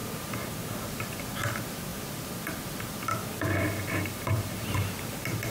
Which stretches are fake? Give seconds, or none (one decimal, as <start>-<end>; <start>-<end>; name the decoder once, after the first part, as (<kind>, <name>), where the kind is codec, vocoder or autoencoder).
1.9-5.5 (vocoder, BigVGAN v2)